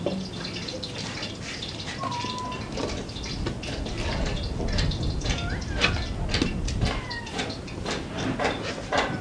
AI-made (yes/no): no